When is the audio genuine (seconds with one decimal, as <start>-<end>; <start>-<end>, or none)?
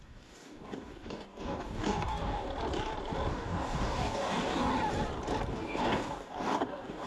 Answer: 2.5-3.3; 4.7-5.5